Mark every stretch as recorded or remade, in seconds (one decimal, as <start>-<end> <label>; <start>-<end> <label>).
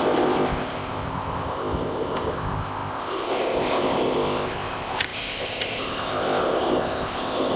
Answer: 0.0-7.6 remade